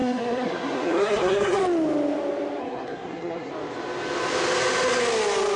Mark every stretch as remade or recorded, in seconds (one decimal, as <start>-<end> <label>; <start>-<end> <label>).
0.0-1.6 remade; 1.6-2.6 recorded; 2.6-3.5 remade; 3.5-5.6 recorded